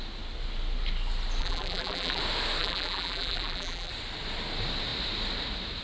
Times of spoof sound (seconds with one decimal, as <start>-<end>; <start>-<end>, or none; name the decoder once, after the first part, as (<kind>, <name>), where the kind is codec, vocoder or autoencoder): 1.4-2.2 (vocoder, BigVGAN v2); 2.6-3.9